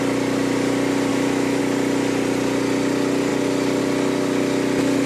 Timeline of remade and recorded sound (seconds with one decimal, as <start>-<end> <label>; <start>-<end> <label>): 0.0-1.1 recorded; 1.1-1.6 remade; 1.6-5.1 recorded

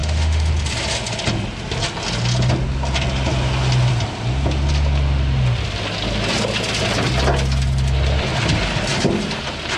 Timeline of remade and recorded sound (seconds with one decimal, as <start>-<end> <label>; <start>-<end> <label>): 0.0-0.5 remade; 0.5-9.8 recorded

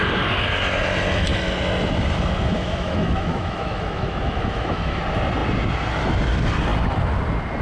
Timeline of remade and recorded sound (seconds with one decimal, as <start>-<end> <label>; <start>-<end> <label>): 0.0-2.5 recorded; 2.5-5.0 remade; 5.0-7.6 recorded

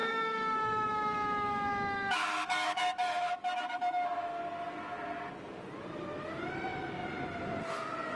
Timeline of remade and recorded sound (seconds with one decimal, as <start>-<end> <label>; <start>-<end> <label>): 0.0-4.4 remade; 4.4-8.2 recorded

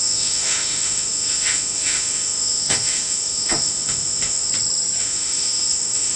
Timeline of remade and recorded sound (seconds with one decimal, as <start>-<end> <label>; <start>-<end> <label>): 0.0-4.5 remade; 4.5-5.0 recorded; 5.0-6.2 remade

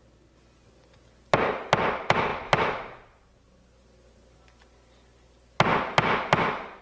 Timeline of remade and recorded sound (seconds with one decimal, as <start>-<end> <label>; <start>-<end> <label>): 0.0-6.8 recorded

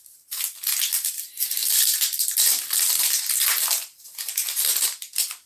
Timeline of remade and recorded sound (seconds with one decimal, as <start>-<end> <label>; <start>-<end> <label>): 0.0-5.5 recorded

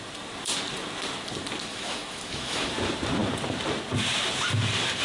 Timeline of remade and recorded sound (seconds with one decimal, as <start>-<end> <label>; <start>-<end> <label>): 0.0-1.7 recorded; 1.7-2.7 remade; 2.7-5.0 recorded